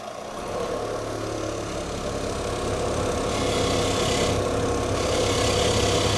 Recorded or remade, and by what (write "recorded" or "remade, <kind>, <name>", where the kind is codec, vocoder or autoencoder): recorded